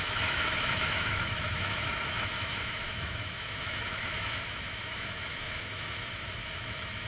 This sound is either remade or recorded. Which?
remade